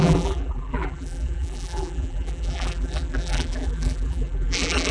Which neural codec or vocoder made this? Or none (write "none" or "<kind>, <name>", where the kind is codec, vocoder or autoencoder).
vocoder, BigVGAN v2